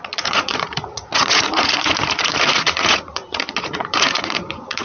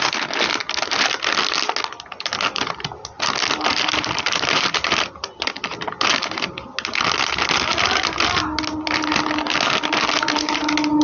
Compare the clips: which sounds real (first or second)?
second